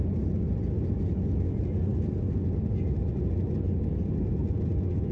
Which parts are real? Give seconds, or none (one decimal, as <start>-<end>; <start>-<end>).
0.0-5.1